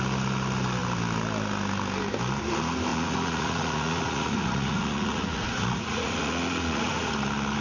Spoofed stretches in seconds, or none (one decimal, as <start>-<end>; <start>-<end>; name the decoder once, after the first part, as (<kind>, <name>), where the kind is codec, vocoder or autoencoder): 2.9-7.1 (vocoder, Vocos)